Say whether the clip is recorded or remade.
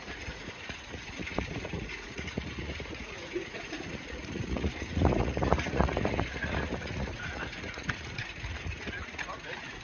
remade